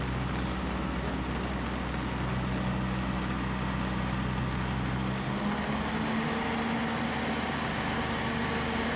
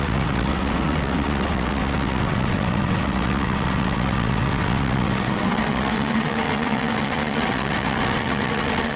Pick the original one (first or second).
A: first